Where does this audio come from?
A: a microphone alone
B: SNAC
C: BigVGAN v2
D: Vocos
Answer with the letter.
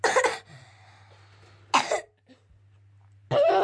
A